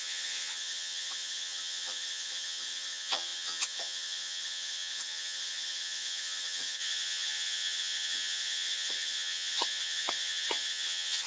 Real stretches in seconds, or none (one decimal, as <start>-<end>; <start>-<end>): none